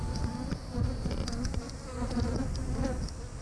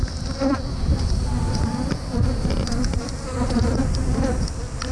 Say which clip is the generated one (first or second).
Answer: second